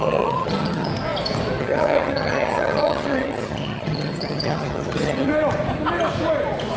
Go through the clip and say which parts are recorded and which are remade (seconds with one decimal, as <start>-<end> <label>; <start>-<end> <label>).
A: 0.0-0.9 remade; 0.9-1.6 recorded; 1.6-5.3 remade; 5.3-6.8 recorded